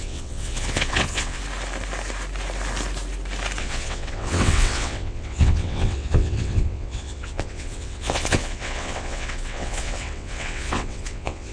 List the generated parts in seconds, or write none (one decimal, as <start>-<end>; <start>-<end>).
0.0-1.4; 3.6-11.5